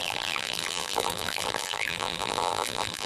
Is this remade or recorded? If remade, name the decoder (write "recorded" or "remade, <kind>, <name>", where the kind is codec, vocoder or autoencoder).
remade, vocoder, BigVGAN v2